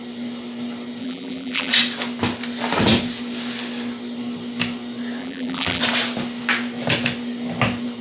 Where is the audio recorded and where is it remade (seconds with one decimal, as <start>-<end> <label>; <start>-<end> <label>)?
0.0-1.0 recorded; 1.0-1.7 remade; 1.7-5.2 recorded; 5.2-5.8 remade; 5.8-8.0 recorded